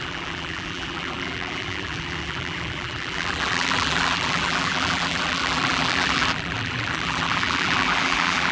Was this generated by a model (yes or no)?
yes